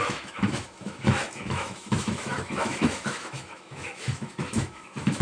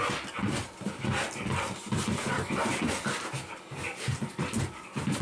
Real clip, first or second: second